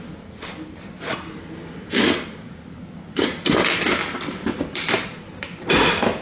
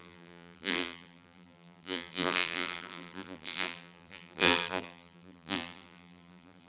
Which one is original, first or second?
first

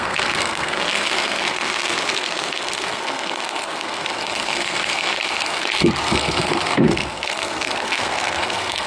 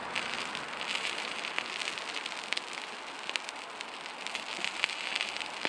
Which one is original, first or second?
second